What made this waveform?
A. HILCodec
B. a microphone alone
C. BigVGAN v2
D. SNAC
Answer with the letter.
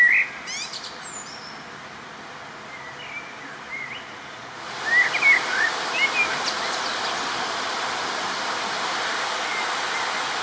B